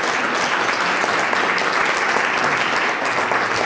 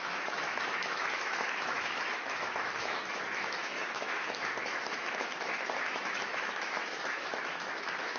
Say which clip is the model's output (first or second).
second